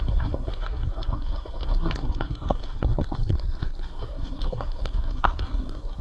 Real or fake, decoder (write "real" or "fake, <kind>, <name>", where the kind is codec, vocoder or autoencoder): fake, codec, SNAC